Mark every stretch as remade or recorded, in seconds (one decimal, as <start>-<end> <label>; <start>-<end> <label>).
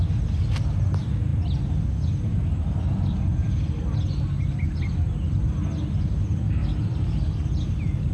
0.0-8.1 recorded